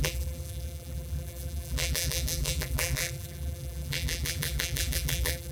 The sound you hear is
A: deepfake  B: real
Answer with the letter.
A